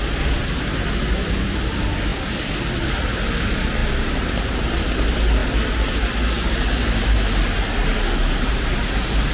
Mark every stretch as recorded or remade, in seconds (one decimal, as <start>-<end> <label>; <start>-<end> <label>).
0.0-9.3 recorded